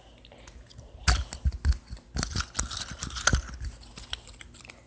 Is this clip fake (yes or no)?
no